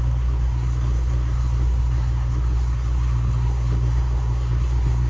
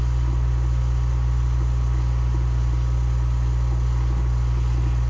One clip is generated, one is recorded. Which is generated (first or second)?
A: first